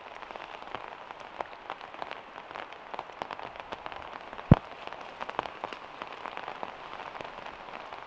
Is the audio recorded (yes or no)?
yes